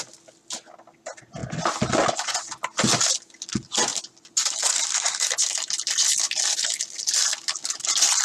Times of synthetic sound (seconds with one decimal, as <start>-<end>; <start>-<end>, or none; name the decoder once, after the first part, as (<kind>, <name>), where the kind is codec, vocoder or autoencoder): none